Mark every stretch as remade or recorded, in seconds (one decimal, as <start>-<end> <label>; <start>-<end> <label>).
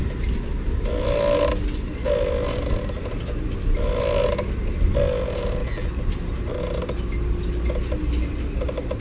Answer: 0.0-9.0 recorded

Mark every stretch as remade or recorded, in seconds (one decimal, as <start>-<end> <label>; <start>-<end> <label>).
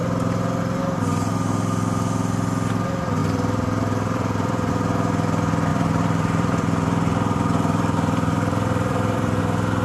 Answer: 0.0-3.2 recorded; 3.2-4.7 remade; 4.7-5.7 recorded; 5.7-9.4 remade; 9.4-9.8 recorded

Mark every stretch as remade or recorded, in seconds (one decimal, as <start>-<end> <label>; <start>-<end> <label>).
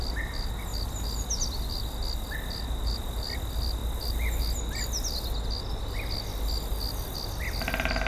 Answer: 0.0-8.1 recorded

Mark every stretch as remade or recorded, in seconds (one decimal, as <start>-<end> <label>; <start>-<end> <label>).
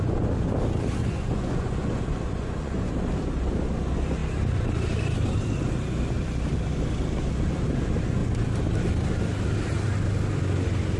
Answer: 0.0-1.0 recorded; 1.0-2.9 remade; 2.9-11.0 recorded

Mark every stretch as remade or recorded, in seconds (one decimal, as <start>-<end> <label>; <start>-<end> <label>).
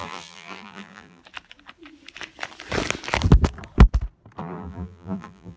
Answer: 0.0-1.2 remade; 1.2-4.4 recorded; 4.4-5.6 remade